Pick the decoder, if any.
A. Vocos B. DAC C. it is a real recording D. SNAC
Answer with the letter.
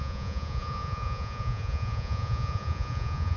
A